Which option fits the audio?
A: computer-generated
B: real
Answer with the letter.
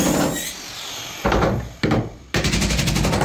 B